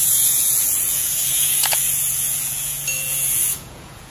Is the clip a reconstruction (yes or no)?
yes